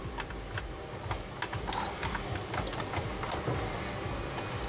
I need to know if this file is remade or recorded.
recorded